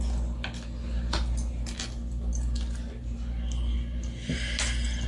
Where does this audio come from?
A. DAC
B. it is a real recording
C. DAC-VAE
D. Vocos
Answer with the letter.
B